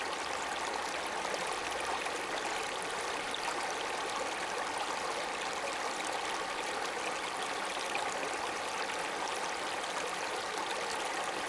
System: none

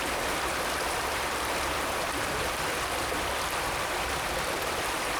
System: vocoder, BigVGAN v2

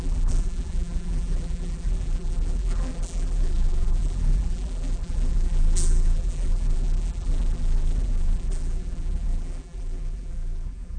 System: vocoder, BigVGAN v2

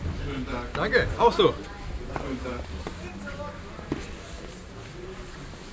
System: none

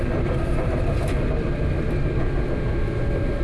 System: none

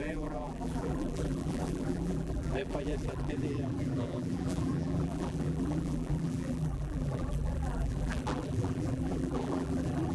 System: vocoder, BigVGAN v2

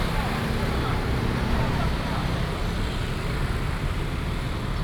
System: none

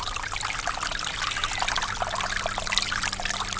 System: none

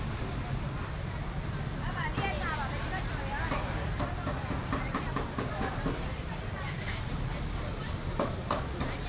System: vocoder, BigVGAN v2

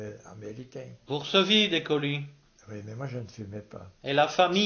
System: none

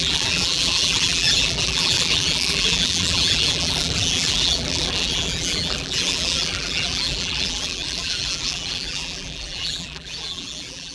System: vocoder, BigVGAN v2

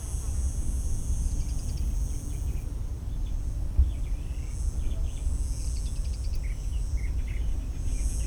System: none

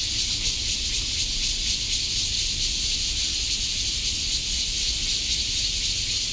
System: vocoder, BigVGAN v2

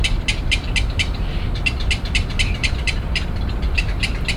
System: vocoder, BigVGAN v2